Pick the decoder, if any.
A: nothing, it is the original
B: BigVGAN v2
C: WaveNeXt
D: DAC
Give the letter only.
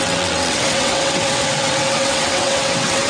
C